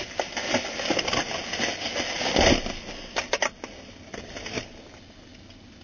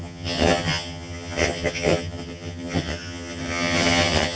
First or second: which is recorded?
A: first